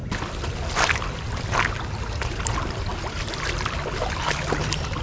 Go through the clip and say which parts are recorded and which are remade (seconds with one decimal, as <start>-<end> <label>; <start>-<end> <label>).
0.0-5.0 recorded